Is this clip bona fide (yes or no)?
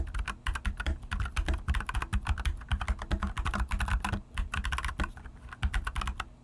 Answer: yes